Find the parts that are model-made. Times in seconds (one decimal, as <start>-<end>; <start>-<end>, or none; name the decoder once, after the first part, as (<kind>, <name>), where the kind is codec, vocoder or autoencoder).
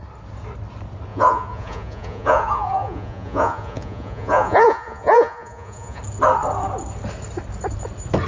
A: 1.1-6.0 (vocoder, Vocos)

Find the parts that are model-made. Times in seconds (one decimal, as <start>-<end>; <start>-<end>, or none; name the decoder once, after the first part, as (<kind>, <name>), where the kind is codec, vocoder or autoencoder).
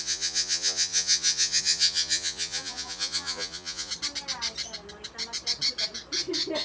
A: 0.0-3.9 (vocoder, Vocos)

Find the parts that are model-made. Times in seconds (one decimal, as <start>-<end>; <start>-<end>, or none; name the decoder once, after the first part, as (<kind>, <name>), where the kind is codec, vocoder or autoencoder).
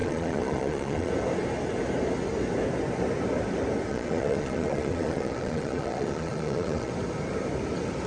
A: 0.0-1.1 (vocoder, Vocos); 3.9-6.9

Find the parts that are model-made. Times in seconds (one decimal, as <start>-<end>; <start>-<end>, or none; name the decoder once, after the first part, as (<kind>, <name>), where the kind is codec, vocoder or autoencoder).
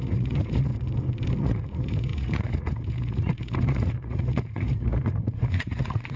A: 0.0-0.7 (vocoder, Vocos); 1.4-6.2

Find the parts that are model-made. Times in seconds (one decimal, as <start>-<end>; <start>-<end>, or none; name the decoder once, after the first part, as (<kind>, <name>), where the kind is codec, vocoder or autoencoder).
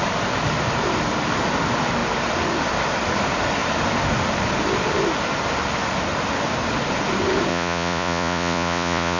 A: 7.5-9.2 (vocoder, Vocos)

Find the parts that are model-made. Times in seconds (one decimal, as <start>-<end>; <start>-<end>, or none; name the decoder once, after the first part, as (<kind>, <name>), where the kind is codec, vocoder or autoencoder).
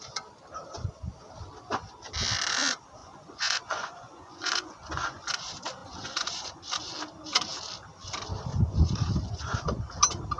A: 3.0-5.3 (vocoder, Vocos); 5.8-6.6; 8.5-9.8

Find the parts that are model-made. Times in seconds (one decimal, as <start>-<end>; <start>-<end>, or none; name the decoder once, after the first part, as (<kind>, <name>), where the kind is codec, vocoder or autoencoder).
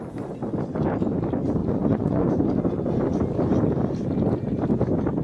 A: 1.6-2.3 (vocoder, Vocos)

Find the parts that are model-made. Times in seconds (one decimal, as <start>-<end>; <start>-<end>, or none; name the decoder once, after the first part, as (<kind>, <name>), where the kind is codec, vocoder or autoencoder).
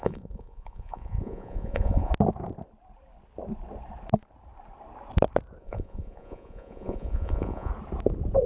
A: 0.0-2.1 (vocoder, Vocos); 5.6-7.7